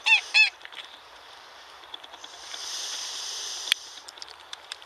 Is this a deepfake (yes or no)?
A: yes